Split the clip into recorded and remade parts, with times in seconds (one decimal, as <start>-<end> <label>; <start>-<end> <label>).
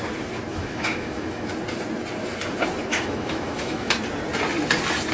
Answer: 0.0-0.5 recorded; 0.5-1.5 remade; 1.5-2.9 recorded; 2.9-3.9 remade; 3.9-5.1 recorded